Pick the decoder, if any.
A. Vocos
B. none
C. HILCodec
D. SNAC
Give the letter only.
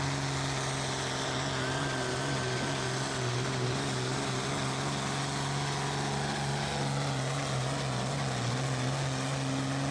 B